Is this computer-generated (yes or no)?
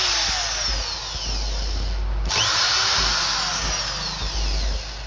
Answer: no